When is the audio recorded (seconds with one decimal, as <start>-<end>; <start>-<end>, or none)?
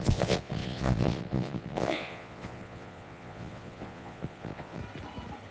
4.8-5.5